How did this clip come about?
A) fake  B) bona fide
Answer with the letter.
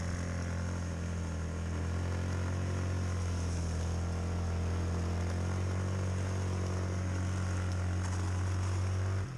B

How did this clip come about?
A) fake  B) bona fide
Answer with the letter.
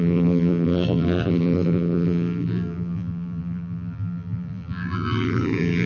A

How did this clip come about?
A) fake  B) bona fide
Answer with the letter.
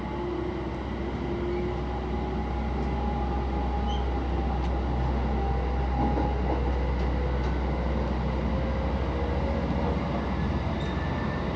B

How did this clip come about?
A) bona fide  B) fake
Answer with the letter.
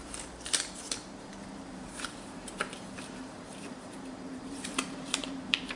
B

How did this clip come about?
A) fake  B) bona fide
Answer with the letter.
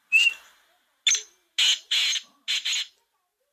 B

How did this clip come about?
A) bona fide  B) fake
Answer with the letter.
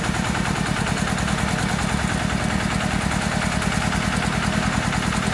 A